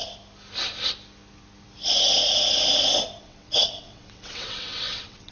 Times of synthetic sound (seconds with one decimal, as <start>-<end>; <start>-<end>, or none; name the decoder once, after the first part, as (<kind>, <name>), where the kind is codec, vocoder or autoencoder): 3.2-5.3 (vocoder, WaveNeXt)